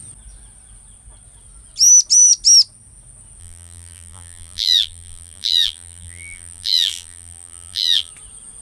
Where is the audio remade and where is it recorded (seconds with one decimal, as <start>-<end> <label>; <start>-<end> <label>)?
0.0-3.4 recorded; 3.4-8.1 remade; 8.1-8.6 recorded